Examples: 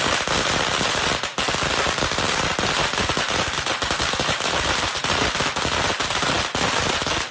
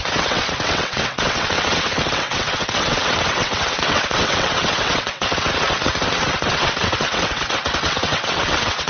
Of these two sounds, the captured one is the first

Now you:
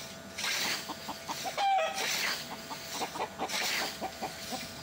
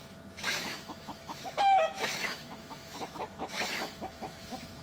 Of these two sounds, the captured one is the first